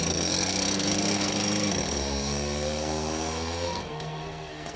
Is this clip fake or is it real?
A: fake